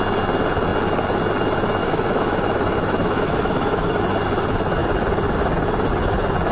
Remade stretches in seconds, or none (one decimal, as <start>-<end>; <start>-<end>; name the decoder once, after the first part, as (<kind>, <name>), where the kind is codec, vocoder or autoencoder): 1.8-4.0 (autoencoder, DAC-VAE)